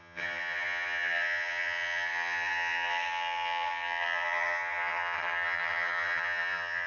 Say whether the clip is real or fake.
fake